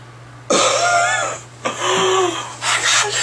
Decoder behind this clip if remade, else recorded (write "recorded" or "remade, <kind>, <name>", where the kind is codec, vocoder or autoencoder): recorded